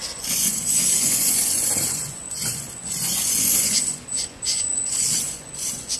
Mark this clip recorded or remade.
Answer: remade